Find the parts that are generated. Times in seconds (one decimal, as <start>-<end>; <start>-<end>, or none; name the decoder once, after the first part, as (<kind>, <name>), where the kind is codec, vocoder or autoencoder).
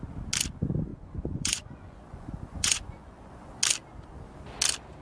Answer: 0.9-3.5 (vocoder, Vocos)